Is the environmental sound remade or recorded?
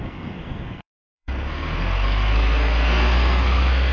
remade